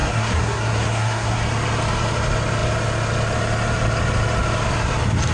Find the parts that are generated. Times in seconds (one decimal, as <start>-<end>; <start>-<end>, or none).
0.0-1.4